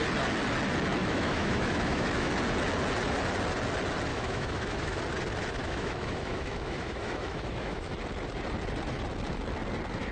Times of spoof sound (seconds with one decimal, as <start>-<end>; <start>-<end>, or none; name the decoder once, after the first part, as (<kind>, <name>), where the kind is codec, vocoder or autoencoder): 1.0-2.3 (autoencoder, DAC-VAE); 4.1-5.0; 5.6-7.9